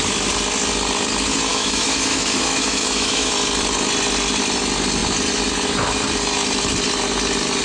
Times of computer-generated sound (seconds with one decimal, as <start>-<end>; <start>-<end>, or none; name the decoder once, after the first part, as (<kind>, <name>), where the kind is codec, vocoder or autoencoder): 1.5-3.3 (autoencoder, DAC-VAE)